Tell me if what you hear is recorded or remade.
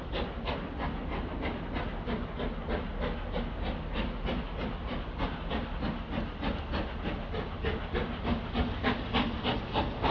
recorded